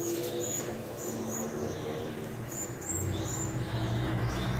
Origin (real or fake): fake